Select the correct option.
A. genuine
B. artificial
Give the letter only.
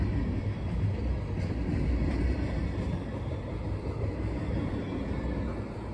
A